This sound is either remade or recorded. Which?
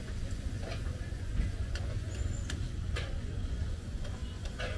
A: remade